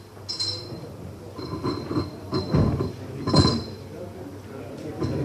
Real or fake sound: real